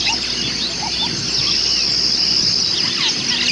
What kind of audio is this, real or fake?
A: real